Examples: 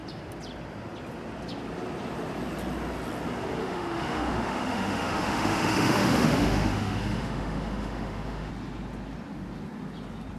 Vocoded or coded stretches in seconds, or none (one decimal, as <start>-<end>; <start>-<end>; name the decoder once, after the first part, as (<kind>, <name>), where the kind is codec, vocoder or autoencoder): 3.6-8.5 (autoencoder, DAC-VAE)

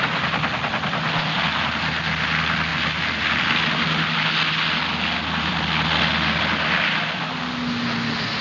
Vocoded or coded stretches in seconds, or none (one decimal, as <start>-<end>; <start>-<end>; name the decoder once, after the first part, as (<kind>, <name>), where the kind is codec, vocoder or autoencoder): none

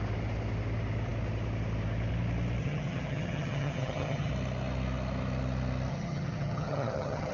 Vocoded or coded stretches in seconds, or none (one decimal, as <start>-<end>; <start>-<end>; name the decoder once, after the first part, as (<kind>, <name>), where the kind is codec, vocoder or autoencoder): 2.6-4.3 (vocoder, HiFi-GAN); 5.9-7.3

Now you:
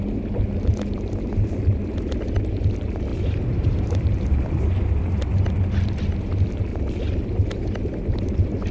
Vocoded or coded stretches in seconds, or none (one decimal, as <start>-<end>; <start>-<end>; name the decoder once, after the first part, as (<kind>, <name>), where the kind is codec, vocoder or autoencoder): 3.1-4.6 (vocoder, BigVGAN v2); 6.7-7.3; 7.8-8.7

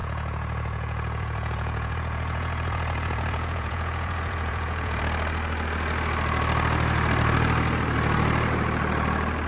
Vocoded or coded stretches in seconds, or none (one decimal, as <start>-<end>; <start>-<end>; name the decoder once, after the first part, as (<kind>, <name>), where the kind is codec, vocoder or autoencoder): 0.0-5.0 (vocoder, Vocos)